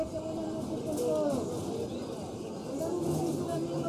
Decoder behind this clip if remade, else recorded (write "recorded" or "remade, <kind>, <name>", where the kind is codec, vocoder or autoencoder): recorded